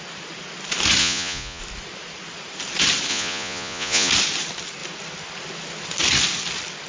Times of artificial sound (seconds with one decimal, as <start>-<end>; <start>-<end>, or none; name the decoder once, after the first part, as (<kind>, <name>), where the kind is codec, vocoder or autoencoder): 1.0-1.6 (vocoder, Vocos); 3.1-4.1